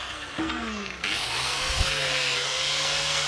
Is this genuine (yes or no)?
no